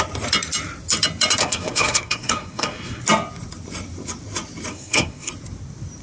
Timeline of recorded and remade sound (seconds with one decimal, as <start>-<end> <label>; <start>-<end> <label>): 0.0-1.4 recorded; 1.4-3.0 remade; 3.0-4.7 recorded; 4.7-5.3 remade; 5.3-6.0 recorded